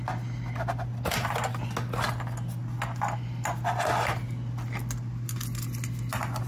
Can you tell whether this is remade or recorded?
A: recorded